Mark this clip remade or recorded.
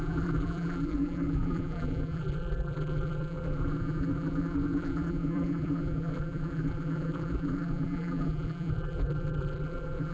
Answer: remade